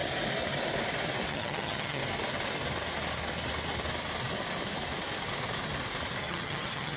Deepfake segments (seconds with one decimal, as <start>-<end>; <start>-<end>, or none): 1.3-2.0; 6.2-7.0